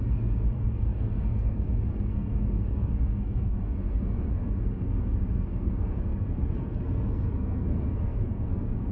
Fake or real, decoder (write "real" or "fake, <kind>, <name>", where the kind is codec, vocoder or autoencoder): fake, codec, SNAC